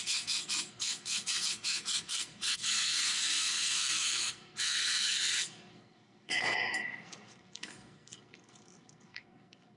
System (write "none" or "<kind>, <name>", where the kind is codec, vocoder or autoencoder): codec, SNAC